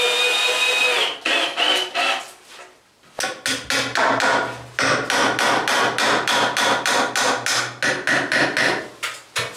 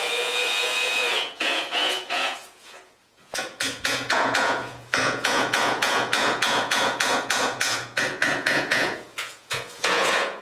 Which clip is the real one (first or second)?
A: first